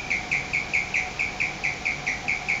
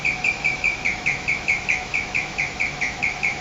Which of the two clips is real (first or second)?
first